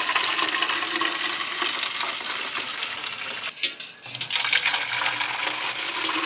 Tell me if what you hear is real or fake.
real